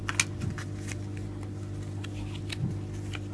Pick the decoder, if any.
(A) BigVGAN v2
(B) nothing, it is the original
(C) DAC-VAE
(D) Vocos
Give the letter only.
B